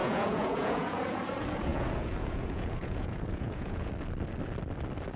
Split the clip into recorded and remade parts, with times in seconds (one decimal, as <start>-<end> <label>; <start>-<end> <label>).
0.0-1.2 remade; 1.2-1.7 recorded; 1.7-3.9 remade; 3.9-5.2 recorded